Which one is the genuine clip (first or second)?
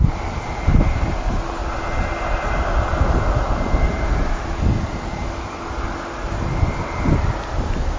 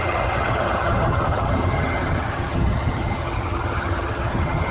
first